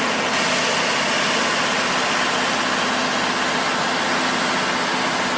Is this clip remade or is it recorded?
recorded